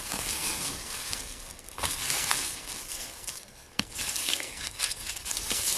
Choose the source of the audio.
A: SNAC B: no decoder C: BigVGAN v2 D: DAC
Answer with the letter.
A